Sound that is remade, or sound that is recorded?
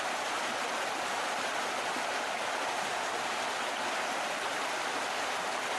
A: recorded